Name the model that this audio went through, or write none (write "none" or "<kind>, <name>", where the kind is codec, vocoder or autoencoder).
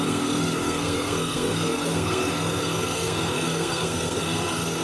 codec, SNAC